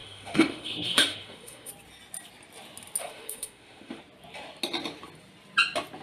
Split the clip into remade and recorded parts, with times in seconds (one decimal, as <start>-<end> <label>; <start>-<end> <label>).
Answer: 0.0-1.7 remade; 1.7-3.0 recorded; 3.0-4.0 remade; 4.0-6.0 recorded